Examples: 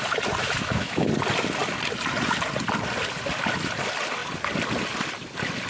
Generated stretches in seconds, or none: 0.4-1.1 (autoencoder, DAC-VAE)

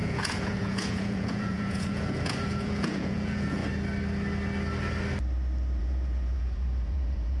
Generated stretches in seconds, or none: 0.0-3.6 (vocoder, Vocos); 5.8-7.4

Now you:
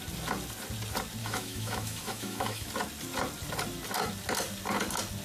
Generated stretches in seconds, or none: 1.2-2.7 (autoencoder, DAC-VAE)

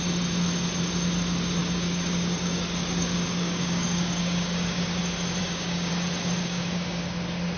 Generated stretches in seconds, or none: 1.6-5.0 (codec, DAC); 5.4-5.9; 6.4-7.0

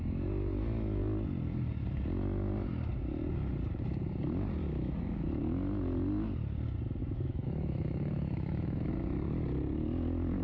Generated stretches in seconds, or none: 4.6-5.4 (autoencoder, DAC-VAE); 7.0-8.9

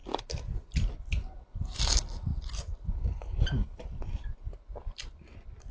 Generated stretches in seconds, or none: 0.0-0.9 (vocoder, BigVGAN v2); 2.3-5.2